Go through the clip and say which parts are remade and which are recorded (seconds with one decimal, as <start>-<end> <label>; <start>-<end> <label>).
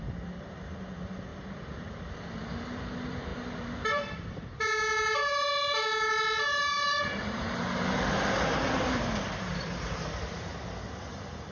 0.0-10.5 remade; 10.5-11.0 recorded; 11.0-11.5 remade